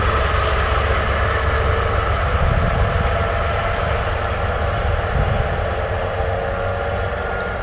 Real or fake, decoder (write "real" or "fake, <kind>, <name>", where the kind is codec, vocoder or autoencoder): real